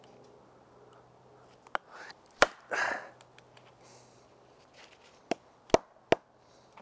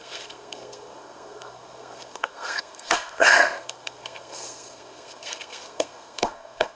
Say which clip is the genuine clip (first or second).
first